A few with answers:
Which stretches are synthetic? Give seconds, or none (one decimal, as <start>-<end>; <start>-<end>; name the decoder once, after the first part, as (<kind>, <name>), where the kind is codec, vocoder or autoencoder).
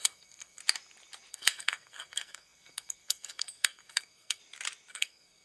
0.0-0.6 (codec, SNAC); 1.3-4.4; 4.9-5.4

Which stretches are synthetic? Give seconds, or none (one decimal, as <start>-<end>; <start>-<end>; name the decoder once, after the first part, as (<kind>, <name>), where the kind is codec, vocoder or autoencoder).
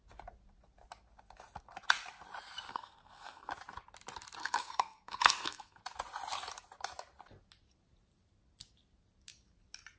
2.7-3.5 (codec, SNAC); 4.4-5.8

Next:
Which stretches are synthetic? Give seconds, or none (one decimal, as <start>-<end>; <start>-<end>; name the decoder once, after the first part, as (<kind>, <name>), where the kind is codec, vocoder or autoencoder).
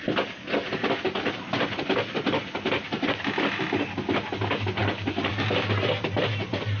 none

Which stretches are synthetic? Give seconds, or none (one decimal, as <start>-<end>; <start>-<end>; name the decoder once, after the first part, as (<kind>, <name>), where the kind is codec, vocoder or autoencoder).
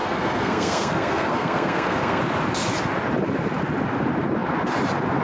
0.0-2.2 (codec, SNAC)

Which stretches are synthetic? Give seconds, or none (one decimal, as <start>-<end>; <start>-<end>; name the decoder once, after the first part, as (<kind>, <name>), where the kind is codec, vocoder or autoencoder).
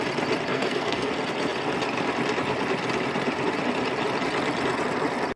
0.5-1.1 (codec, SNAC)